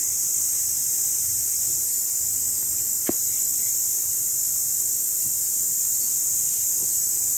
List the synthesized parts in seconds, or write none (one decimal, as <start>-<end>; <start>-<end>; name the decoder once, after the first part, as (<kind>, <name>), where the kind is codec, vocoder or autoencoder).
none